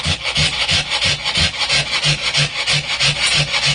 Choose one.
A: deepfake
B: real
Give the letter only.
B